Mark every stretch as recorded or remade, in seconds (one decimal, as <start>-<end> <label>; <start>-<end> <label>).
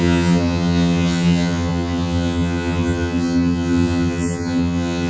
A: 0.0-5.1 remade